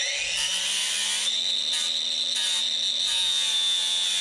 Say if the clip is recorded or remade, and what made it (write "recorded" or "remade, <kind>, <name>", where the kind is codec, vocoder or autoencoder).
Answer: recorded